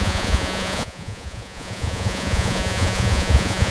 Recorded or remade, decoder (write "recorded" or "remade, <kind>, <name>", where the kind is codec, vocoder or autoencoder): remade, vocoder, Vocos